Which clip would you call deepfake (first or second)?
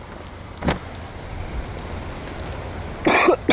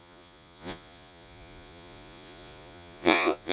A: second